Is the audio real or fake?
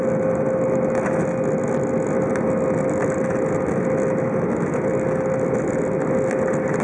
real